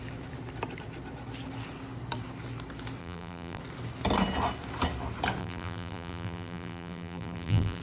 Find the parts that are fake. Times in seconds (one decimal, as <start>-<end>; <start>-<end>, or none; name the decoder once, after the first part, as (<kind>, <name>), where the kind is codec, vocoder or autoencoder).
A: 3.0-3.6 (vocoder, BigVGAN v2); 5.4-7.8